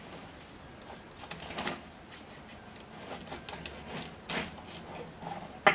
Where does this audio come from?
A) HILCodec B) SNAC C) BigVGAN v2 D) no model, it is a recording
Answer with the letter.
D